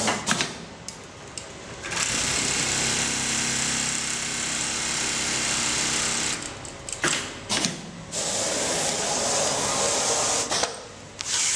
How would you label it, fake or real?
real